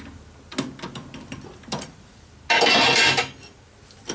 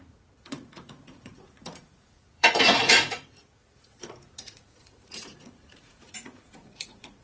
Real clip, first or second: first